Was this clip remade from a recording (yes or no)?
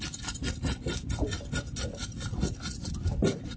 no